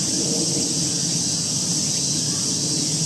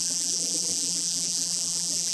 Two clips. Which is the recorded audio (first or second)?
first